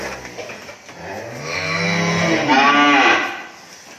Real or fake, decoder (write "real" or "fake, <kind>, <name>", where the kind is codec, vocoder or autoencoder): real